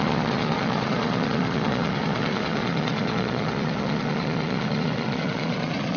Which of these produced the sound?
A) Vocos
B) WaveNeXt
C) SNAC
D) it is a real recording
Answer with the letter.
A